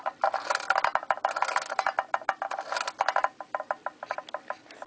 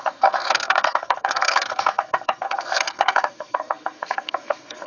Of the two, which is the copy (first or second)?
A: second